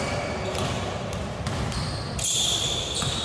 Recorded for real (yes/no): yes